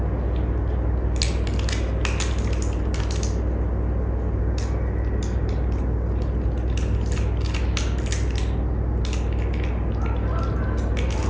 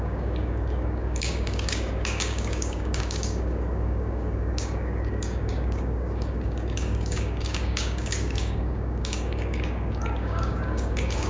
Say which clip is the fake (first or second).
second